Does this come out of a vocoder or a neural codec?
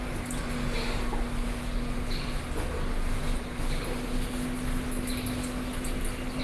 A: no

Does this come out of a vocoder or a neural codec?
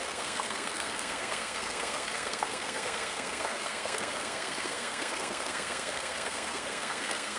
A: yes